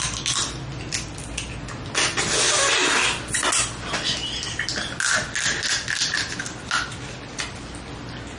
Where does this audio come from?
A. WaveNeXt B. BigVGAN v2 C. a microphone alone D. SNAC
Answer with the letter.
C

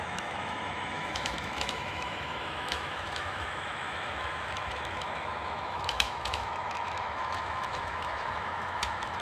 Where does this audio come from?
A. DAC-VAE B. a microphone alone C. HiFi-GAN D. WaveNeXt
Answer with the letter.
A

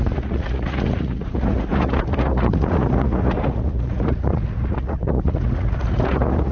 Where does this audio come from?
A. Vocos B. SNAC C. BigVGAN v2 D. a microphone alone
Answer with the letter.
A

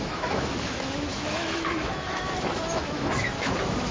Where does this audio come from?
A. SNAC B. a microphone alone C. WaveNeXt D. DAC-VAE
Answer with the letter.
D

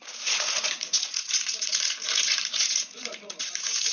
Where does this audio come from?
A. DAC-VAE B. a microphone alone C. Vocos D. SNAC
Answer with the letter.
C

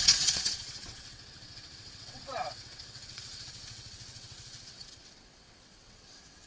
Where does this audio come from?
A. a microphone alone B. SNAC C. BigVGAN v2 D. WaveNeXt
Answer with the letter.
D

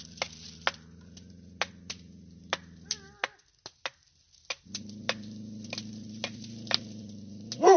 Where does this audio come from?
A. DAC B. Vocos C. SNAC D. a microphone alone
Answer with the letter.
D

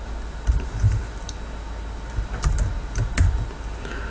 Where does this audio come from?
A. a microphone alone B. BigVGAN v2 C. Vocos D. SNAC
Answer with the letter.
A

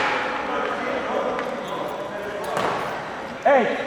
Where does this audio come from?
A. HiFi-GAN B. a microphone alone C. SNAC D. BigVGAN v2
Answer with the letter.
B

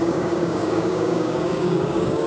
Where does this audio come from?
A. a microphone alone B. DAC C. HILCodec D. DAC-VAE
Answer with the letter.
B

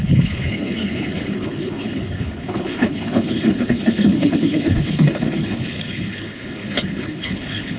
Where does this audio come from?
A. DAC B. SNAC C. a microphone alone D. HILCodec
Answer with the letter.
D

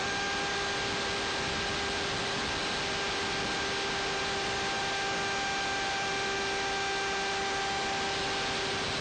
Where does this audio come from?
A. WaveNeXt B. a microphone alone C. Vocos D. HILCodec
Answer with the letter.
B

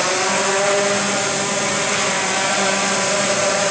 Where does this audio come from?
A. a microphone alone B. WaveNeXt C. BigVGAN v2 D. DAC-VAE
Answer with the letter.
A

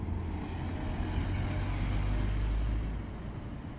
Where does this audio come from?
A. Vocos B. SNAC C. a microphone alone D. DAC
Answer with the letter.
C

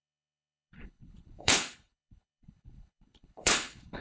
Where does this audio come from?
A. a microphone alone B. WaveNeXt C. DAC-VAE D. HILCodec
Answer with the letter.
D